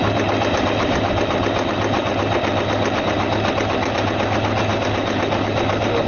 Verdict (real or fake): real